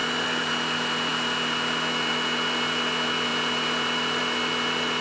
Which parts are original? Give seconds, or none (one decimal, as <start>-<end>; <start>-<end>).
0.5-5.0